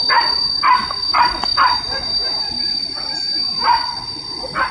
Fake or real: fake